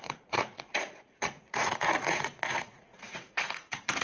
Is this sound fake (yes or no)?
yes